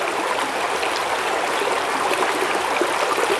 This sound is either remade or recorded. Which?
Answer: recorded